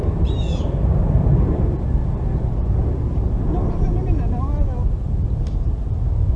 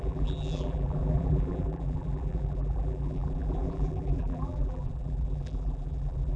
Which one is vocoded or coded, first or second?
second